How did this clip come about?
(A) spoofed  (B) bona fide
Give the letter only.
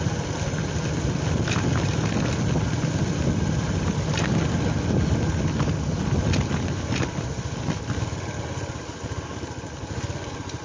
B